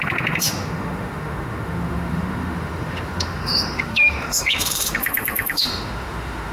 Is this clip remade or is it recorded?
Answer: remade